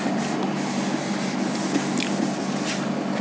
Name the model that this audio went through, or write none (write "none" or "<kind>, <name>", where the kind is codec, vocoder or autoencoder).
none